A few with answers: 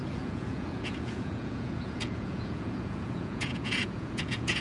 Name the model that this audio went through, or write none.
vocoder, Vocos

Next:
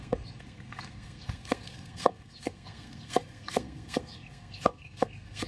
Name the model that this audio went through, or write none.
codec, SNAC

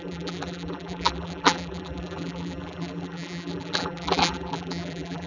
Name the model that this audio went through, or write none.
vocoder, BigVGAN v2